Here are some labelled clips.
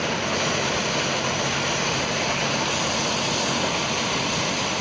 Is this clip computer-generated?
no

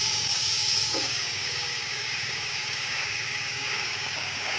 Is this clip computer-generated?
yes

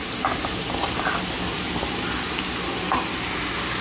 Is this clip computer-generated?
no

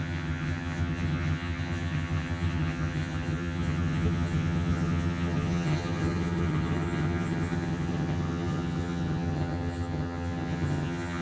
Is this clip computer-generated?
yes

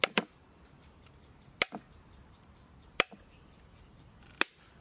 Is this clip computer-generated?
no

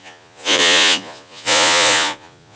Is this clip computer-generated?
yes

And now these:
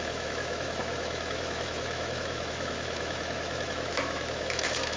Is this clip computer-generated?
yes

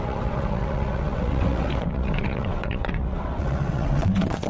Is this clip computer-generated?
yes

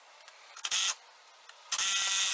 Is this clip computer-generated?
no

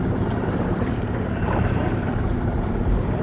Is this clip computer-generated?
yes